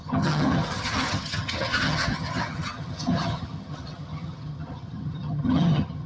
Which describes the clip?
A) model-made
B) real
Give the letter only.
A